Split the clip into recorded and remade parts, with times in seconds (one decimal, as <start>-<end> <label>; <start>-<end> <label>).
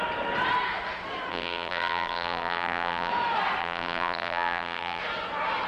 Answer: 0.0-1.3 recorded; 1.3-3.1 remade; 3.1-3.6 recorded; 3.6-5.0 remade; 5.0-5.7 recorded